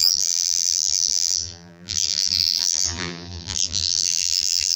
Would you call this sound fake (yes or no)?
yes